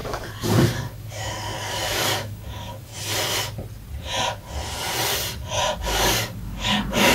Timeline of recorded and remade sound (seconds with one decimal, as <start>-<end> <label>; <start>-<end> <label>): 0.0-2.9 remade; 2.9-5.8 recorded; 5.8-7.1 remade